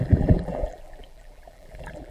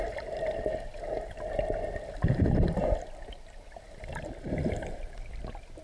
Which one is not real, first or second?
first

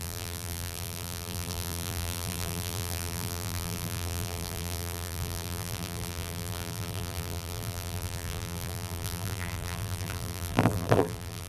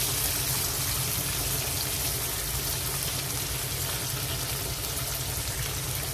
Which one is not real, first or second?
first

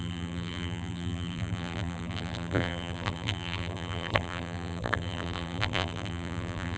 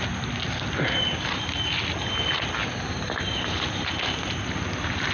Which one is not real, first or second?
first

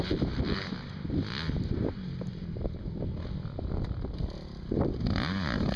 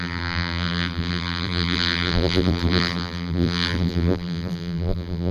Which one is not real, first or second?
second